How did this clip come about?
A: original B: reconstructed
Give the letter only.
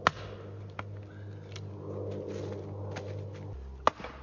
A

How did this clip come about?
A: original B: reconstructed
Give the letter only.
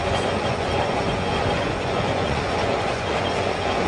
B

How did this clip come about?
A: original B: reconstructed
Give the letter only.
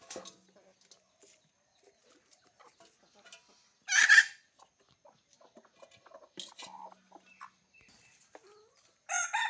A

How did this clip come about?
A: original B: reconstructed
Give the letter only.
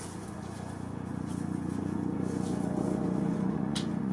B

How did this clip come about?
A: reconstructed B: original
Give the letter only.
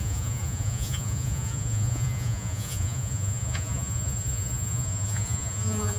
A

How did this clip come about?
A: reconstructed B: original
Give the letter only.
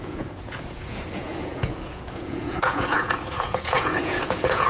A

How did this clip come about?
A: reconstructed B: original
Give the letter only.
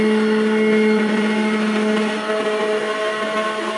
B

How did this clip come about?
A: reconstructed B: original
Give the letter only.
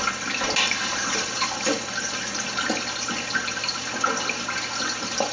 B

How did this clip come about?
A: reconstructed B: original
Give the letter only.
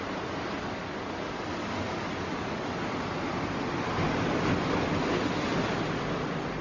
B